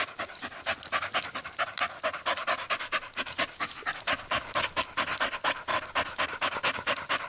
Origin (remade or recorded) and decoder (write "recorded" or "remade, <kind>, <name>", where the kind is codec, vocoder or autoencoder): recorded